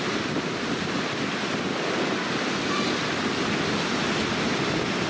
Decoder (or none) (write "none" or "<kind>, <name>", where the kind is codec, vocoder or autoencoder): none